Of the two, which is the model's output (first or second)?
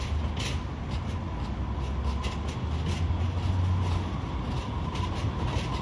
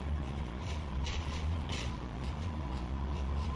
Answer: second